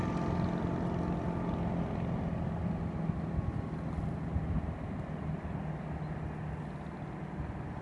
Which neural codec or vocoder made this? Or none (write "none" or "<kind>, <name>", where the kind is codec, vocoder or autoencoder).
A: none